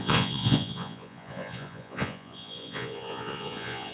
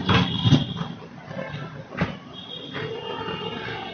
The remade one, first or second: first